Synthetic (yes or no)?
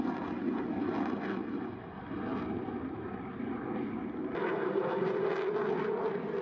no